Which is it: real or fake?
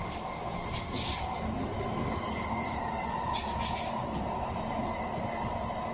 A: real